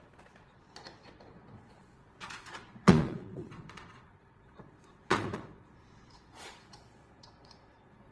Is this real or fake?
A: fake